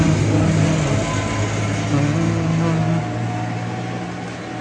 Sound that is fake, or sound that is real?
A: real